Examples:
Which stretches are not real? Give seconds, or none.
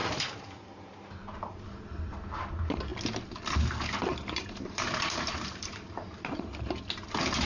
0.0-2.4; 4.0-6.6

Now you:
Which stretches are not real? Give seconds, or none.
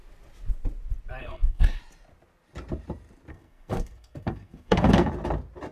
1.2-1.8; 3.3-5.1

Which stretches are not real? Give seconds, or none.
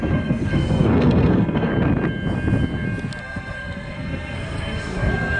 0.0-1.7; 3.2-5.4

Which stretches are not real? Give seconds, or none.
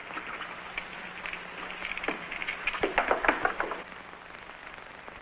none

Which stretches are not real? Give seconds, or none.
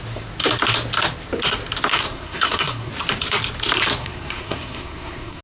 1.9-2.9; 4.0-5.4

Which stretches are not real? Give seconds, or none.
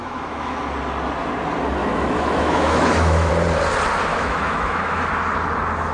0.0-0.6; 1.8-3.3; 4.1-5.1